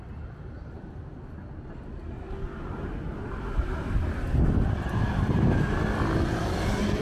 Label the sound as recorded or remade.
recorded